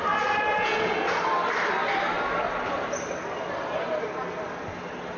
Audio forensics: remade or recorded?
recorded